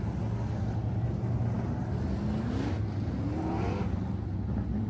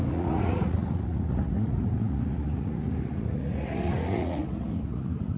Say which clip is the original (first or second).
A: first